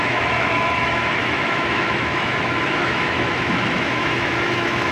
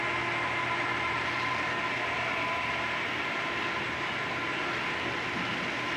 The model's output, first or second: first